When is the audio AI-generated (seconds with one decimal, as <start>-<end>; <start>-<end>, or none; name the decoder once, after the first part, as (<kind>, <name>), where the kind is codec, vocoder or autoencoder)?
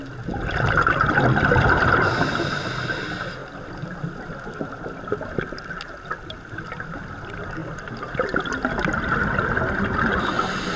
none